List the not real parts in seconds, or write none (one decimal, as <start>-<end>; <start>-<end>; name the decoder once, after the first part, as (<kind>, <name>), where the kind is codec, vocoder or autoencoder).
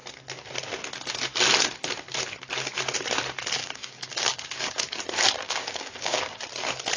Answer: 3.6-5.0 (codec, DAC); 5.4-6.2